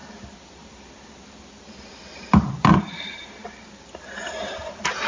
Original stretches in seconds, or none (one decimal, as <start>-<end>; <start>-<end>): 2.8-5.1